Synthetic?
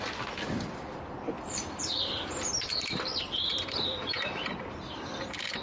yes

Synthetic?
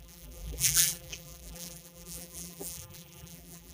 yes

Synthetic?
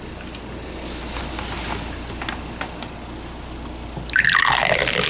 no